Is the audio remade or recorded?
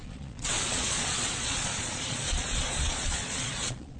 remade